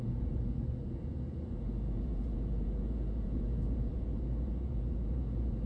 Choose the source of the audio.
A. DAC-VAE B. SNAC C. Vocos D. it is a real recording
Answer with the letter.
C